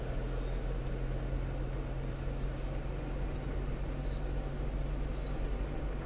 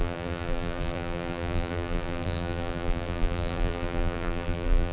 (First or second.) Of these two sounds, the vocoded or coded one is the second